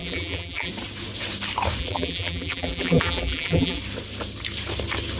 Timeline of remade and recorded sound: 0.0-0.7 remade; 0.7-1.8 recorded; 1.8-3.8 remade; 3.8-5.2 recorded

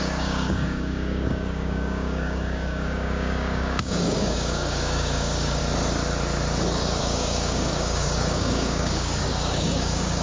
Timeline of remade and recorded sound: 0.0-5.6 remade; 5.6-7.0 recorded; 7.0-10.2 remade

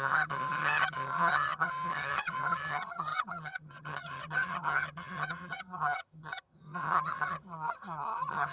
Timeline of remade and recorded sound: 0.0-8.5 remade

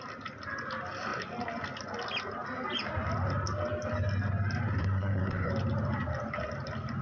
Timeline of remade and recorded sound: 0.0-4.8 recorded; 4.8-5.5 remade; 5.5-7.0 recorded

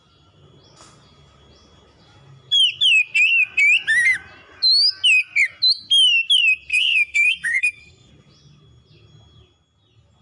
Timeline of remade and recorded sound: 0.0-6.7 recorded; 6.7-8.1 remade; 8.1-10.2 recorded

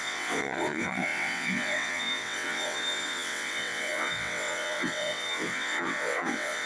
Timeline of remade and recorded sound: 0.0-6.7 remade

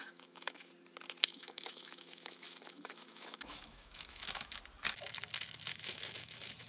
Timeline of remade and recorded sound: 0.0-0.7 remade; 0.7-1.3 recorded; 1.3-4.6 remade; 4.6-5.7 recorded; 5.7-6.7 remade

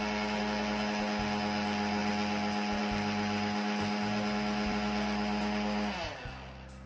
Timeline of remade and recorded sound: 0.0-6.9 recorded